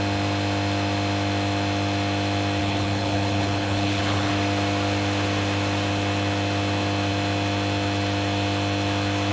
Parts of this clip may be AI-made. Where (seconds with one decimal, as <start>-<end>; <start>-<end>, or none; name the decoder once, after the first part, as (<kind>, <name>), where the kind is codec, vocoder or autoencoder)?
2.6-4.3 (codec, HILCodec)